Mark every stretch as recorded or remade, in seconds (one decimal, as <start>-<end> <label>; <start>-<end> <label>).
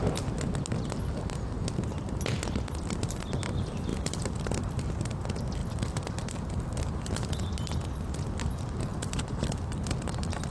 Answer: 0.0-3.9 recorded; 3.9-4.8 remade; 4.8-5.6 recorded; 5.6-6.5 remade; 6.5-8.9 recorded; 8.9-9.8 remade; 9.8-10.5 recorded